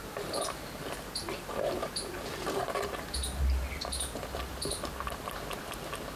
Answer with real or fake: real